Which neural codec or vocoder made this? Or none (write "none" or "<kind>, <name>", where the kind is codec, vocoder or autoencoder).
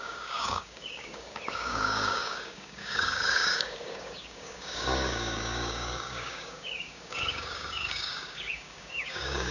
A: codec, DAC